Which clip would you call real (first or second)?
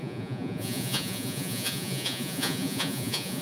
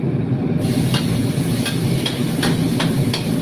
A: second